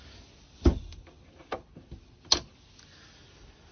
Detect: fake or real real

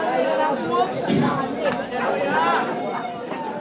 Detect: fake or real real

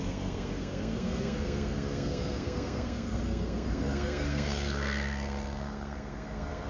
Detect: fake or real fake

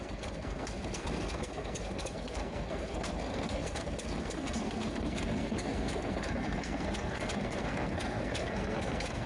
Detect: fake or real fake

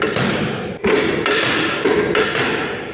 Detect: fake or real real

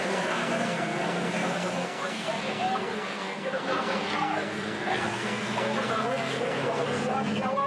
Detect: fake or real fake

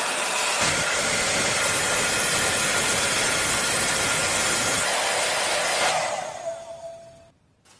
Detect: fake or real real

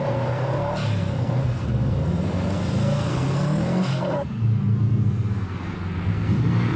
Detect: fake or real fake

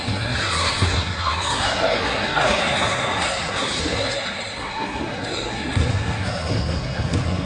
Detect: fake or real fake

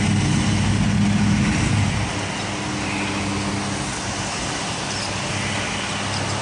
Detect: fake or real real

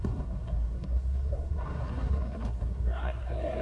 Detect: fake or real fake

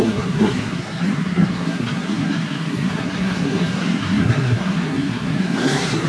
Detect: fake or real fake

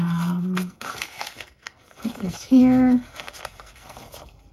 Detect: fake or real fake